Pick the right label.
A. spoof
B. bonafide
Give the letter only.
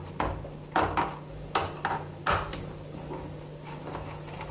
B